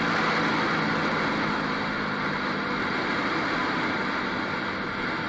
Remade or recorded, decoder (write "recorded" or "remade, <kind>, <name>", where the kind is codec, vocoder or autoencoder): recorded